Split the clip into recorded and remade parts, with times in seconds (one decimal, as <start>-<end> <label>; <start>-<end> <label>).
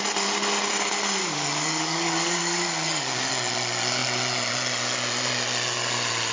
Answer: 0.0-1.2 recorded; 1.2-3.3 remade; 3.3-6.3 recorded